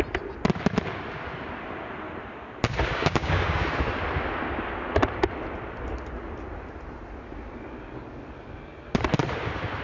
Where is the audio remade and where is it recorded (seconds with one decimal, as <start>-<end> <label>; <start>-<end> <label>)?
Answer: 0.0-2.9 recorded; 2.9-3.6 remade; 3.6-9.8 recorded